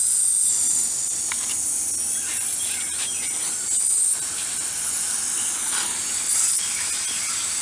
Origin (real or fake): real